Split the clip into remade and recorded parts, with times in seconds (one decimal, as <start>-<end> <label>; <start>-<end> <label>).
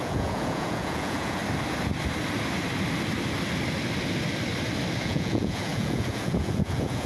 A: 0.0-1.4 remade; 1.4-5.0 recorded; 5.0-7.1 remade